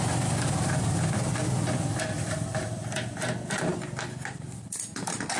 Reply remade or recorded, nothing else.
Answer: recorded